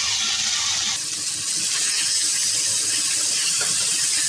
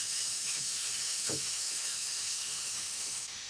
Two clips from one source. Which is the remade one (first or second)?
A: second